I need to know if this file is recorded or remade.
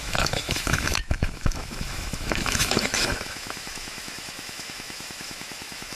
remade